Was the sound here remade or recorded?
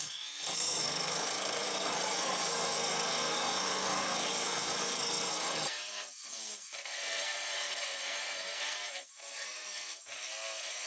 remade